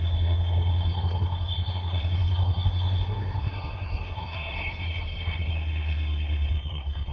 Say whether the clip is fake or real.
fake